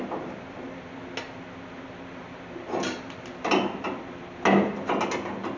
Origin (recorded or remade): recorded